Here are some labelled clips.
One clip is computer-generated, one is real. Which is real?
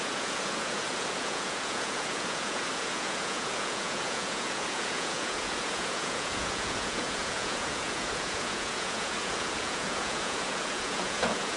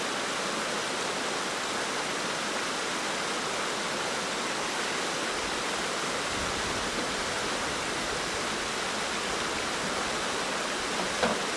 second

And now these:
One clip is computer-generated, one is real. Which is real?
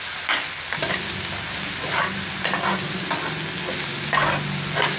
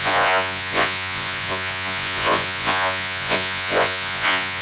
first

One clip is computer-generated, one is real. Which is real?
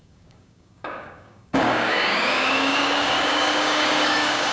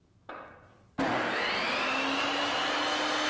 second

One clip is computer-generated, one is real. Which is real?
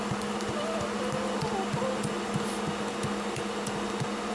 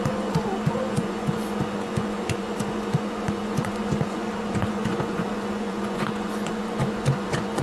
first